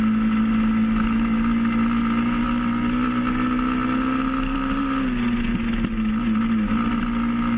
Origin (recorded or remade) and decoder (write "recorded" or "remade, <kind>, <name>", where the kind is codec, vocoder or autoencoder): recorded